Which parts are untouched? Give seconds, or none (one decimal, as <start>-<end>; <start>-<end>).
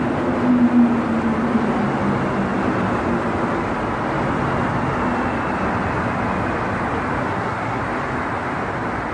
0.0-7.2; 7.8-9.1